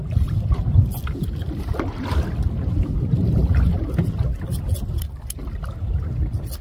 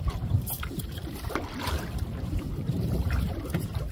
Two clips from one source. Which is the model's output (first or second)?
second